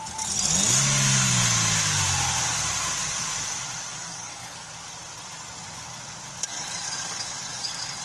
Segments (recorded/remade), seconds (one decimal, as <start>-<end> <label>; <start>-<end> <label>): 0.0-3.9 recorded; 3.9-4.7 remade; 4.7-6.5 recorded; 6.5-8.0 remade